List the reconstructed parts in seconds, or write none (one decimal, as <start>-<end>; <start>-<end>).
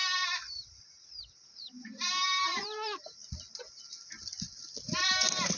0.0-3.2; 5.0-5.6